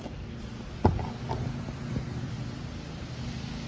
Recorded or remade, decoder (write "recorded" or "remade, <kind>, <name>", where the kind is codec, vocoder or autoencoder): recorded